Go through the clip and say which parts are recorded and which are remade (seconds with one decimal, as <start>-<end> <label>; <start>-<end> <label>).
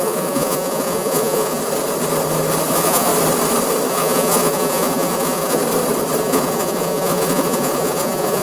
0.0-1.6 remade; 1.6-2.7 recorded; 2.7-3.1 remade; 3.1-3.9 recorded; 3.9-5.6 remade; 5.6-6.2 recorded; 6.2-8.4 remade